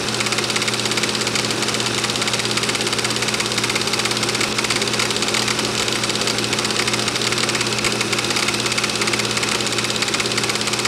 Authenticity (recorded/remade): recorded